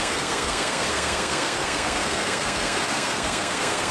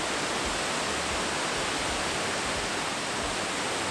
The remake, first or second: first